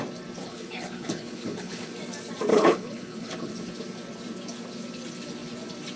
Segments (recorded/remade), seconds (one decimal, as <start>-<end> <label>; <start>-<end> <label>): 0.0-0.4 recorded; 0.4-1.9 remade; 1.9-2.5 recorded; 2.5-3.5 remade; 3.5-6.0 recorded

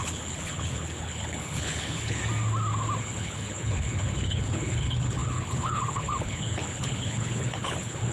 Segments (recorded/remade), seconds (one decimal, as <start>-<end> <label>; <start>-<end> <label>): 0.0-2.2 remade; 2.2-3.0 recorded; 3.0-8.1 remade

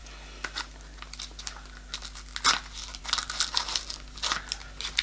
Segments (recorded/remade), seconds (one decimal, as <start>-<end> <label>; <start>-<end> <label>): 0.0-5.0 recorded

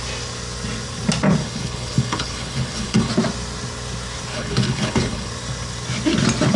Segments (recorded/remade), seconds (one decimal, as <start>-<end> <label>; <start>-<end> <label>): 0.0-1.4 recorded; 1.4-3.1 remade; 3.1-4.3 recorded; 4.3-5.3 remade; 5.3-6.6 recorded

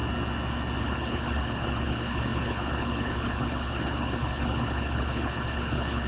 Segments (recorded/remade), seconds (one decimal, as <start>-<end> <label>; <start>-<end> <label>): 0.0-0.8 recorded; 0.8-6.1 remade